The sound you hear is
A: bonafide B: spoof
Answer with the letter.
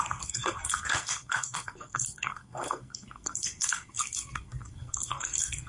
B